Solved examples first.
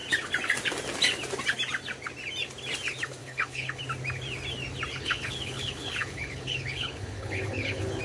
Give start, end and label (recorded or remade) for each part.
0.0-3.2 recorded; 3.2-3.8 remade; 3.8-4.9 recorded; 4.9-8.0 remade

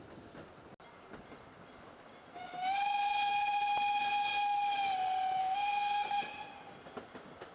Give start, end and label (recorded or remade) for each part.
0.0-5.4 recorded; 5.4-6.3 remade; 6.3-7.5 recorded

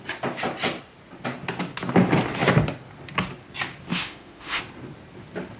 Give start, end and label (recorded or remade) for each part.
0.0-3.9 recorded; 3.9-4.6 remade; 4.6-5.6 recorded

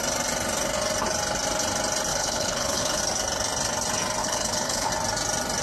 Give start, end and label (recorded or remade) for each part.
0.0-2.1 recorded; 2.1-3.0 remade; 3.0-4.2 recorded; 4.2-4.9 remade; 4.9-5.6 recorded

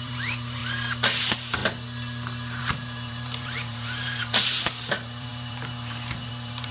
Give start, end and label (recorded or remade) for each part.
0.0-0.6 remade; 0.6-1.2 recorded; 1.2-1.6 remade; 1.6-2.6 recorded; 2.6-6.7 remade

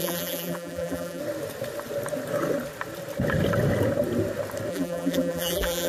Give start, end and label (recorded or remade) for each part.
0.0-1.2 remade; 1.2-4.7 recorded; 4.7-5.9 remade

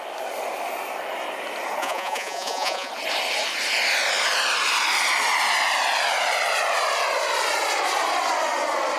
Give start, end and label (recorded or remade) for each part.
0.0-1.8 recorded; 1.8-2.9 remade; 2.9-9.0 recorded

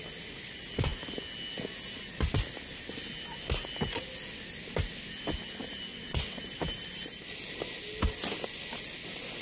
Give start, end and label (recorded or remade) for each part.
0.0-5.9 recorded; 5.9-6.4 remade; 6.4-9.4 recorded